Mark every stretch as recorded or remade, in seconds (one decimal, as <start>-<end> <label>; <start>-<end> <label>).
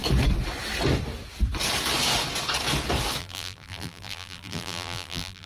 0.0-3.2 recorded; 3.2-5.5 remade